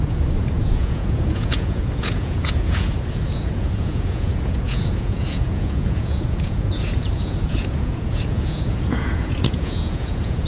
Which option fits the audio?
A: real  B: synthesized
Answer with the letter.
B